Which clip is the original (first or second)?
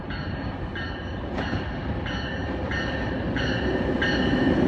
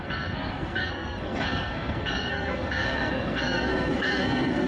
first